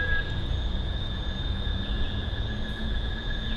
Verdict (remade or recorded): remade